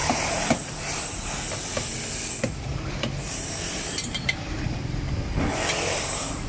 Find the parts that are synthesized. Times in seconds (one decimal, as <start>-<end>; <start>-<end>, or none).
0.0-1.4; 2.7-5.3